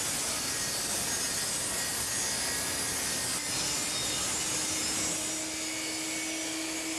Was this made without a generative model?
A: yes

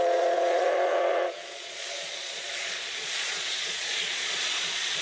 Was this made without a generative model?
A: no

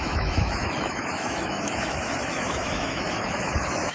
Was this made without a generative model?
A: no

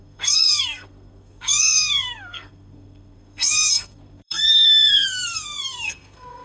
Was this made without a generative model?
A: no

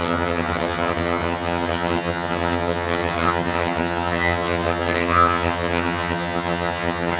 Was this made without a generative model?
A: no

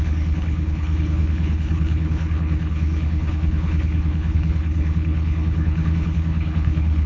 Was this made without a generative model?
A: no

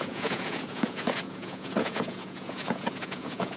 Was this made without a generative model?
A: no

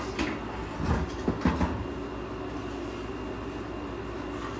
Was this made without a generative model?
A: yes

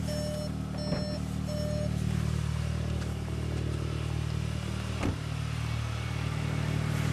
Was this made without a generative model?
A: yes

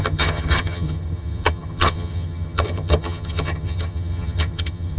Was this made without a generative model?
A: no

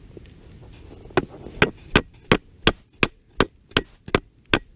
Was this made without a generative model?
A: yes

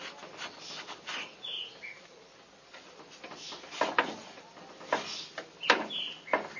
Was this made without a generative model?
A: yes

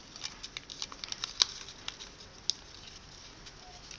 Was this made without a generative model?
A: yes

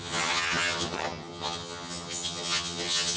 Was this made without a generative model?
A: no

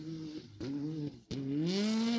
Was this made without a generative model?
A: yes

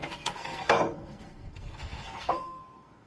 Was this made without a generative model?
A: no